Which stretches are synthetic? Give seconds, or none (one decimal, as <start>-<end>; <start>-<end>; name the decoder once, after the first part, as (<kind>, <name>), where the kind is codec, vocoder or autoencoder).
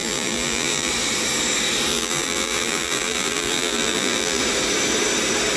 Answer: 0.0-0.9 (vocoder, BigVGAN v2); 1.9-4.4